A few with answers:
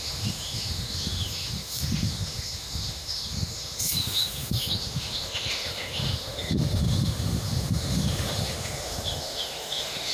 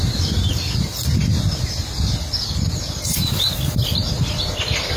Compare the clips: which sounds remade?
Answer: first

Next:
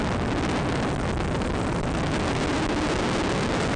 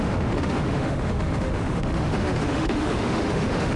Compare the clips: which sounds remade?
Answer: second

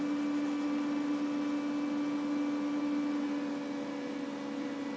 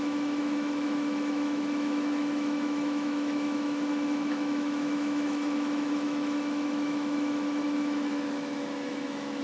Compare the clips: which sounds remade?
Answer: second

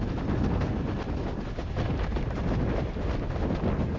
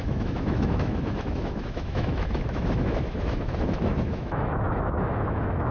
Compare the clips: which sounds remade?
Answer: second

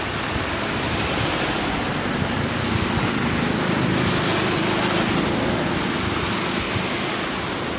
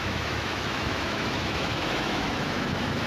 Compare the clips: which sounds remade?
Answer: second